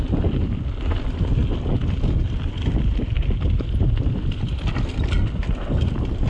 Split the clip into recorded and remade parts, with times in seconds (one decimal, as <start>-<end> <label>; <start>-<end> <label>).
0.0-6.3 recorded